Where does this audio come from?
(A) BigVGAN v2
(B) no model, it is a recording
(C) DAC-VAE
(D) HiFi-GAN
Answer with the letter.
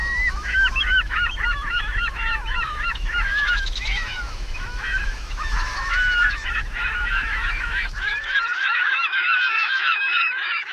C